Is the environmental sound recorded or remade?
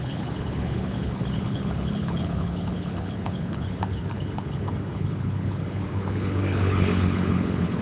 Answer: remade